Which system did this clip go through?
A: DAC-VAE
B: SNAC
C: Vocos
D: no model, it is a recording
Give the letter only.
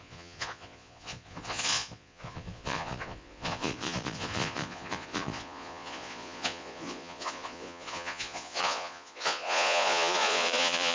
C